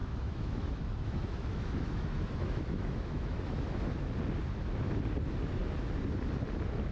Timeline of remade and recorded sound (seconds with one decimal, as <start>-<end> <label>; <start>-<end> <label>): 0.0-4.1 remade; 4.1-6.9 recorded

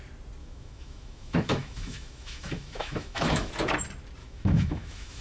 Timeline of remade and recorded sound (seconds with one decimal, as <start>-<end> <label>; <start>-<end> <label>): 0.0-0.4 recorded; 0.4-3.5 remade; 3.5-4.2 recorded; 4.2-5.2 remade